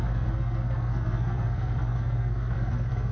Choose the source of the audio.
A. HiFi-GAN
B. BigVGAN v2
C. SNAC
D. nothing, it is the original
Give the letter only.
C